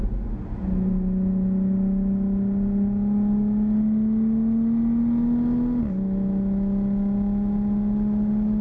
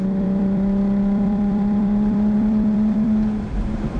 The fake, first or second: second